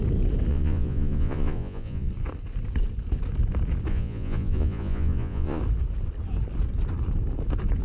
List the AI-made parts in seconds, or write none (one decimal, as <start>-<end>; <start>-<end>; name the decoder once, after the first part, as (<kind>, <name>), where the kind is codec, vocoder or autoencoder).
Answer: 0.5-2.1 (vocoder, Vocos); 3.9-5.6